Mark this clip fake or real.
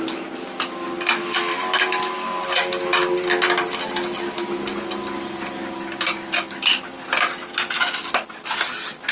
real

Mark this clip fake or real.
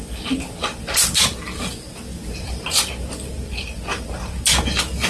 real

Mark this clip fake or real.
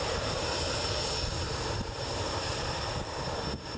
fake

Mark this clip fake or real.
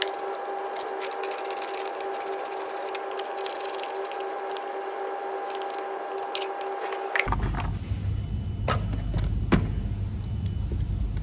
real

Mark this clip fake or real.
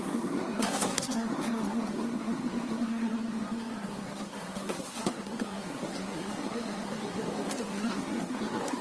fake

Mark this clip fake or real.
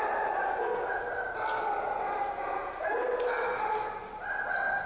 real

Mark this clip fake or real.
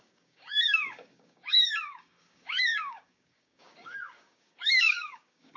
fake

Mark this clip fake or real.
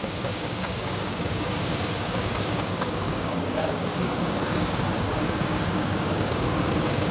fake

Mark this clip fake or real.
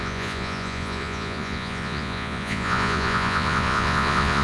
fake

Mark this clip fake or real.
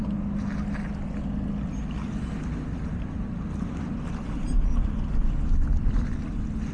real